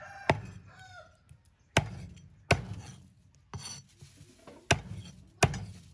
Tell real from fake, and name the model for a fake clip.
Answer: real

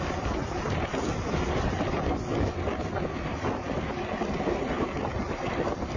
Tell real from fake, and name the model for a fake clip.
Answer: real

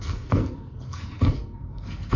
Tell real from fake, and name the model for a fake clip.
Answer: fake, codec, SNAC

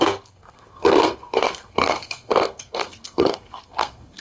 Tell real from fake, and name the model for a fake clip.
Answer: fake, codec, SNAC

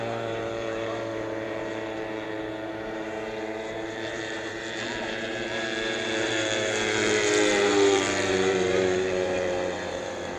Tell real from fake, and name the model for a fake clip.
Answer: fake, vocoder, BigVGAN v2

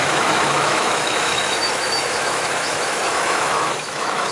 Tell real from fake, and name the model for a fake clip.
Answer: fake, autoencoder, DAC-VAE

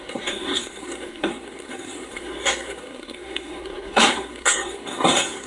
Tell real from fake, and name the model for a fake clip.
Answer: fake, codec, SNAC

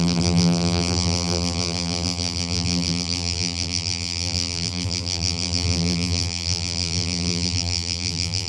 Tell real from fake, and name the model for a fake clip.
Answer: fake, vocoder, BigVGAN v2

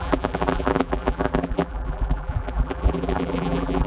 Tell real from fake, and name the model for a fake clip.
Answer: fake, vocoder, BigVGAN v2